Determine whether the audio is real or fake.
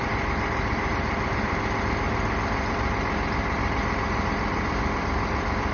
real